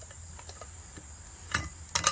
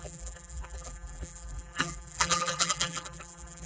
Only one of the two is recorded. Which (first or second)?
first